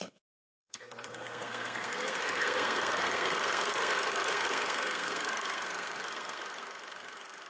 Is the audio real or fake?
fake